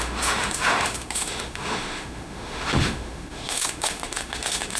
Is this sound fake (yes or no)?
yes